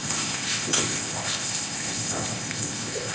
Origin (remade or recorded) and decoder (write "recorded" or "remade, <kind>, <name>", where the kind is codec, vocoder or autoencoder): remade, codec, ZipCodec